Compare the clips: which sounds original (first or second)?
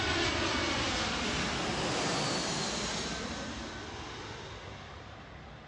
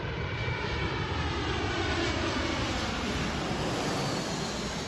first